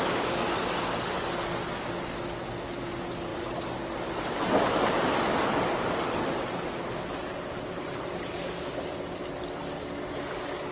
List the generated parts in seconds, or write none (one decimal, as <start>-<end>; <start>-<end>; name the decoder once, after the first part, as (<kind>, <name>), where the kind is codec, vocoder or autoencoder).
none